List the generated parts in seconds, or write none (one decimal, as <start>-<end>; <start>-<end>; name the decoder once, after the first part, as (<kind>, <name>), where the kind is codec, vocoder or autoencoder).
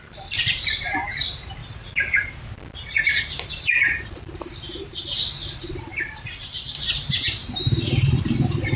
0.0-1.6 (vocoder, BigVGAN v2); 3.0-8.8